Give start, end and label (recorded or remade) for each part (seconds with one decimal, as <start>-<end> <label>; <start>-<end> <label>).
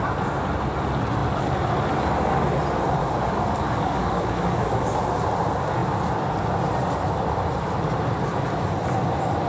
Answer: 0.0-3.0 recorded; 3.0-4.7 remade; 4.7-9.5 recorded